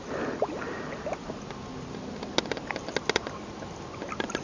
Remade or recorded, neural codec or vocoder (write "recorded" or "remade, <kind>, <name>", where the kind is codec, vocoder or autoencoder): recorded